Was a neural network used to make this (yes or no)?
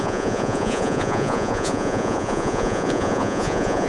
yes